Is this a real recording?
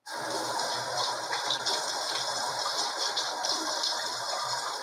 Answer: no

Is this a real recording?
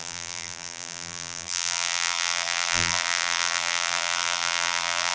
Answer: no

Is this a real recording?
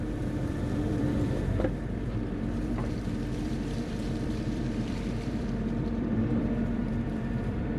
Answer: no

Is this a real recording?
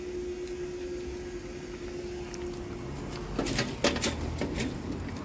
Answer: yes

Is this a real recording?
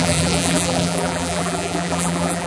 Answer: no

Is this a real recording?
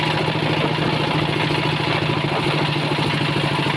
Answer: yes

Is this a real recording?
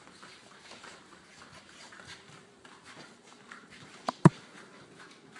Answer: no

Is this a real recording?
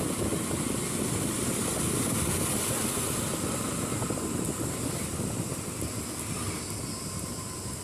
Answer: yes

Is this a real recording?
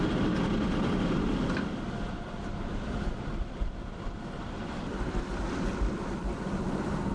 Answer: no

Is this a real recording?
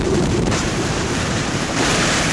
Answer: no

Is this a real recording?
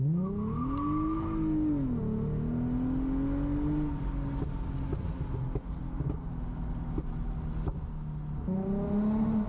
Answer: yes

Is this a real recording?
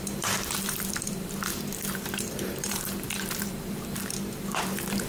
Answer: no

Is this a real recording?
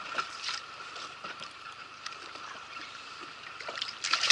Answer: no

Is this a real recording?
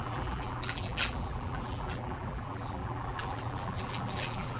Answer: no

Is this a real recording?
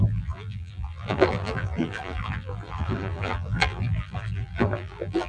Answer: no